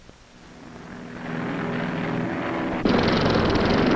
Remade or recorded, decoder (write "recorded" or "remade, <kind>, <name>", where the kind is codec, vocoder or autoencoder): recorded